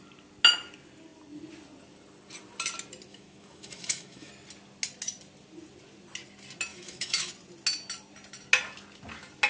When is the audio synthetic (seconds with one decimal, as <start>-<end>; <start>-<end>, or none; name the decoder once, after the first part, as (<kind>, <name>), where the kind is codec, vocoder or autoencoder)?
3.1-4.3 (autoencoder, DAC-VAE); 6.7-7.3